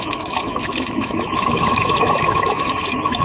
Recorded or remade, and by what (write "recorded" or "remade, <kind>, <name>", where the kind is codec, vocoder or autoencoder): remade, autoencoder, DAC-VAE